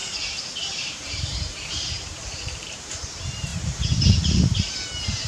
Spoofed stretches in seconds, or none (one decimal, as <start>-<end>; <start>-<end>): 0.6-5.3